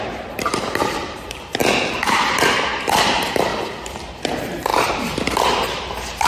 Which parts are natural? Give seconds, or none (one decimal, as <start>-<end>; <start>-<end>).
1.6-2.9; 3.5-4.3